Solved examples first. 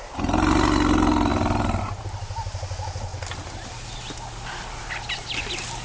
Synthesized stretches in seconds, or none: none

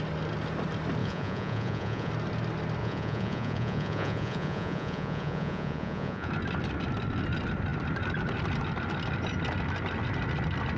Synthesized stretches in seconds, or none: 1.0-2.1 (vocoder, Vocos); 2.8-6.3

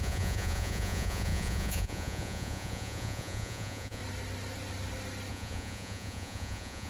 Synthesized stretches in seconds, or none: 0.0-4.0 (vocoder, Vocos); 5.3-6.9

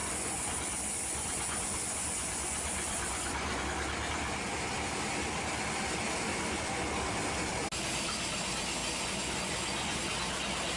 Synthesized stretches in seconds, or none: 0.0-3.6 (vocoder, Vocos); 6.3-6.9; 8.8-10.0

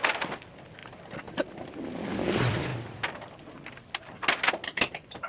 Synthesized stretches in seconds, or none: none

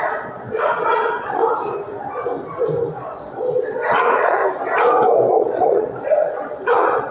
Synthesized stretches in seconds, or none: 0.0-1.4 (vocoder, Vocos); 2.9-4.4; 5.3-7.1

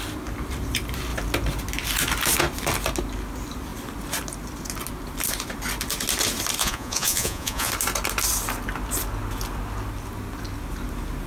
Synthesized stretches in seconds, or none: 6.6-7.7 (vocoder, Vocos)

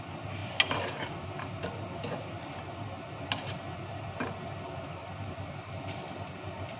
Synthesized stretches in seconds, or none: none